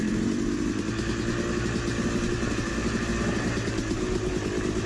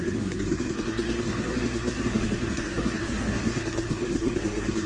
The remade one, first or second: second